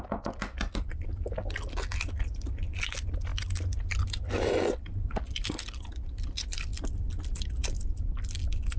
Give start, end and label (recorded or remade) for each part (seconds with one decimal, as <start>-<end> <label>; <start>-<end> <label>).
0.0-8.8 recorded